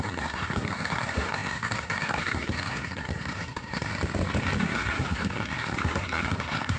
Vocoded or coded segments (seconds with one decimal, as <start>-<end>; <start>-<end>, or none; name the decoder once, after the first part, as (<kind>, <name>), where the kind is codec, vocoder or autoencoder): 0.0-3.9 (codec, SNAC); 4.6-6.8